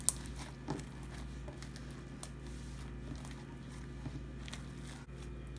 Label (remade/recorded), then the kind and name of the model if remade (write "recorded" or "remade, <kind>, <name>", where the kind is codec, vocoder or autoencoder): recorded